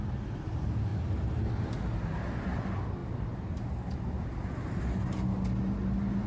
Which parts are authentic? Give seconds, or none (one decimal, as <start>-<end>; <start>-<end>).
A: 0.0-6.3